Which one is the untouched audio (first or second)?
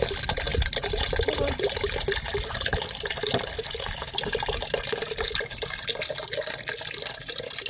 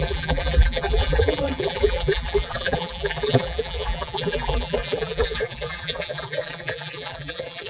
first